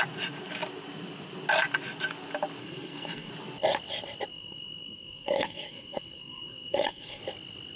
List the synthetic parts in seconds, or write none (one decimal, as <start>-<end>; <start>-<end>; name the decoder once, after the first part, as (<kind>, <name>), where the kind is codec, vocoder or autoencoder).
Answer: 2.6-3.3 (codec, SNAC); 4.3-7.2